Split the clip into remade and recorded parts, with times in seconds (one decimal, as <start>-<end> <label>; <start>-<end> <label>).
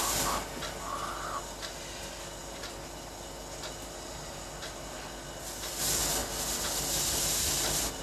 0.0-8.0 recorded